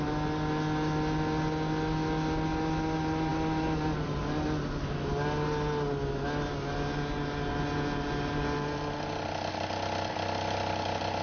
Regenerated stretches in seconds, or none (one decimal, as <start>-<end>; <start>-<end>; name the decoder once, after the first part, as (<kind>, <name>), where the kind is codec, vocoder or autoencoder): none